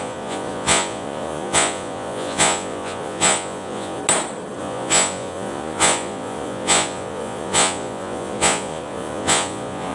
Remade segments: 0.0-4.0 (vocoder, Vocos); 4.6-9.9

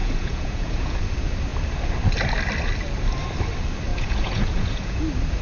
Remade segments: 0.0-1.0 (vocoder, Vocos); 3.9-5.0

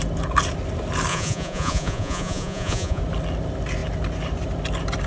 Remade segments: 1.1-3.0 (vocoder, Vocos)

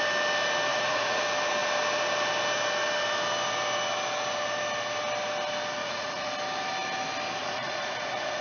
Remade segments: 0.7-1.2 (vocoder, Vocos); 5.8-6.3; 7.4-8.4

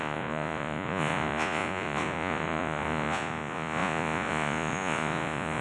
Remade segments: 0.0-5.6 (vocoder, Vocos)

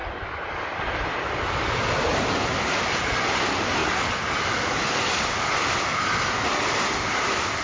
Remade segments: none